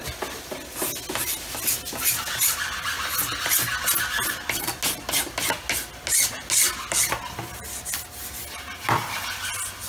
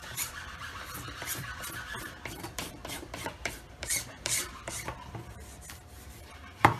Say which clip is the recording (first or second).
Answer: first